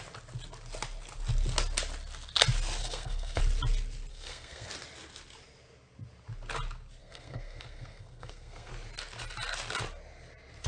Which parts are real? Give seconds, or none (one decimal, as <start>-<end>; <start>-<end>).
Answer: 0.0-2.8; 3.4-4.1; 4.7-7.0; 8.7-10.7